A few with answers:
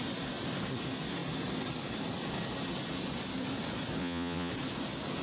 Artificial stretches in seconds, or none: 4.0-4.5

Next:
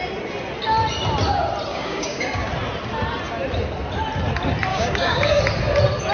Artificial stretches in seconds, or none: 1.7-2.5; 4.7-5.4

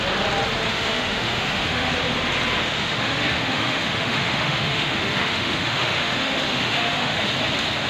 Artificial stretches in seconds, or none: 0.7-1.9; 2.6-7.3

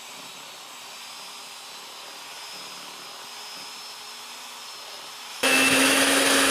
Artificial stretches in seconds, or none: 5.3-6.0

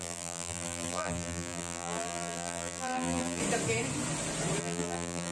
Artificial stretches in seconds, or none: 0.0-3.4; 4.6-5.3

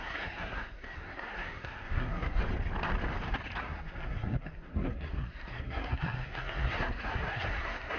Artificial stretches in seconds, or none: 0.0-2.4; 3.6-8.0